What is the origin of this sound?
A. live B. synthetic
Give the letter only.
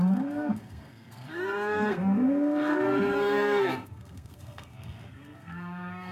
B